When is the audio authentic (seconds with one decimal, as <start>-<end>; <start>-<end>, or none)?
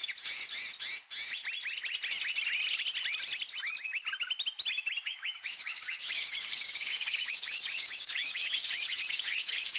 0.0-5.0